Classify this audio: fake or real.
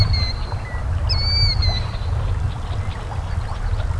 real